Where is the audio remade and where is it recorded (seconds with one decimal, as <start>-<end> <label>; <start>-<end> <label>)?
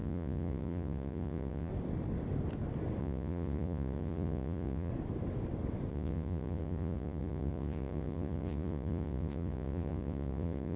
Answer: 0.0-1.7 remade; 1.7-3.0 recorded; 3.0-4.9 remade; 4.9-5.9 recorded; 5.9-10.8 remade